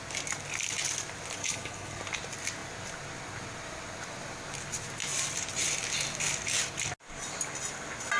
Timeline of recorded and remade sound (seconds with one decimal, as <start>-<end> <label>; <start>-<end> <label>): 0.0-1.4 recorded; 1.4-2.0 remade; 2.0-8.2 recorded